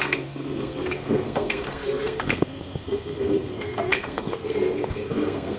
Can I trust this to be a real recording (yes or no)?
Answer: no